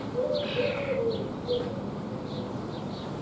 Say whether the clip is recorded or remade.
recorded